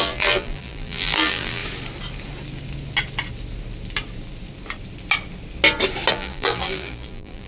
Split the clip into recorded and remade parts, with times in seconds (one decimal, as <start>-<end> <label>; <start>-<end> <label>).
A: 0.0-1.6 remade; 1.6-6.1 recorded; 6.1-7.5 remade